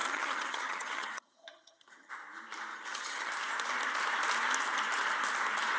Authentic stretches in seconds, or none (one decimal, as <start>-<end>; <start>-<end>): 2.1-2.7; 3.3-5.8